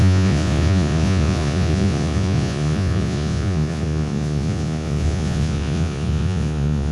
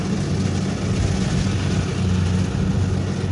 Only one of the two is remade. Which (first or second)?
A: first